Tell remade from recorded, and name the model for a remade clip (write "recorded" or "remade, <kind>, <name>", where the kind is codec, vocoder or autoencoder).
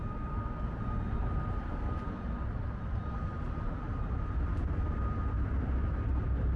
recorded